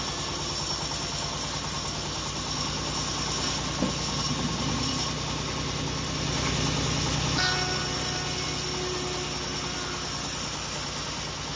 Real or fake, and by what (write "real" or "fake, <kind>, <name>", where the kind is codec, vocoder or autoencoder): real